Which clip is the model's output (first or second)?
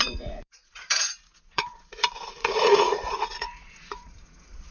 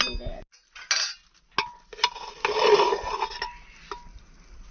first